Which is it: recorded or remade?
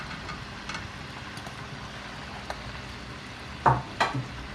recorded